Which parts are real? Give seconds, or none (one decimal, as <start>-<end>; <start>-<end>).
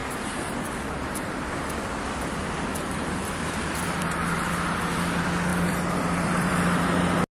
0.0-2.7; 4.0-5.5; 6.8-7.3